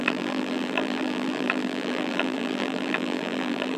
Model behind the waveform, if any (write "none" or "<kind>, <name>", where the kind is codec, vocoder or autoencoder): vocoder, BigVGAN v2